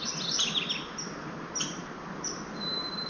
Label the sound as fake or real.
real